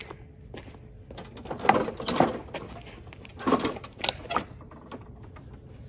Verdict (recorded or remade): recorded